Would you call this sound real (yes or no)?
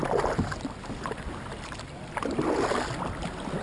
yes